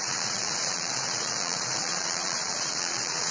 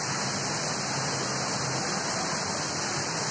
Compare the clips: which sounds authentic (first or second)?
second